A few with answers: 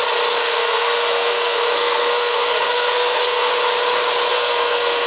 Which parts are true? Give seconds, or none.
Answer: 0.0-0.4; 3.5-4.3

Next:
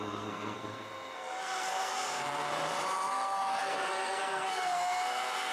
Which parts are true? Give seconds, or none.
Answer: 2.5-3.1

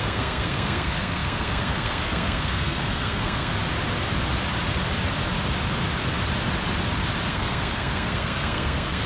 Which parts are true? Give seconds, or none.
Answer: 3.5-7.3

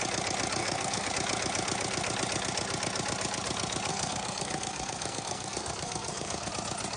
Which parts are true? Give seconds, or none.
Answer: 0.0-0.6; 1.1-3.9; 6.5-7.0

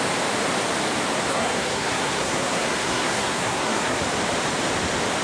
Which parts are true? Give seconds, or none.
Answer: 0.0-1.3; 4.0-5.2

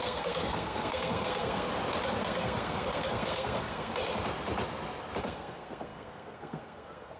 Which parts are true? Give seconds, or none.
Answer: 1.7-2.2; 3.9-5.2